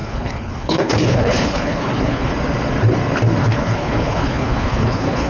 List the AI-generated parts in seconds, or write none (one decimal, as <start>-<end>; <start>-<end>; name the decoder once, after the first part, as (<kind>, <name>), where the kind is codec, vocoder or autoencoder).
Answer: 0.0-2.3 (codec, HILCodec); 3.4-5.3